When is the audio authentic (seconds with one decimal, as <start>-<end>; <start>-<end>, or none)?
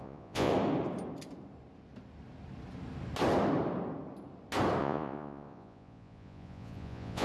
0.5-4.8